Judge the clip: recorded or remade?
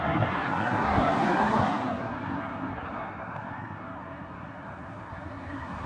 remade